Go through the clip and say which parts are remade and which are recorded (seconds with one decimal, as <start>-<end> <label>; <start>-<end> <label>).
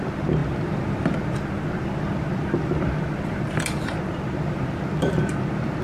0.0-5.8 recorded